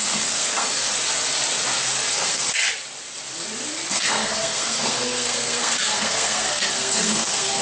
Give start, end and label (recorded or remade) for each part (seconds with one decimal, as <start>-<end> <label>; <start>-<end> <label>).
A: 0.0-0.9 remade; 0.9-2.0 recorded; 2.0-2.6 remade; 2.6-3.9 recorded; 3.9-7.6 remade